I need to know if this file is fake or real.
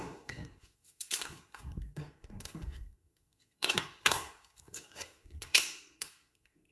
fake